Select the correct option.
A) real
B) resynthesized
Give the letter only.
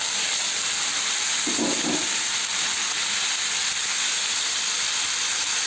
A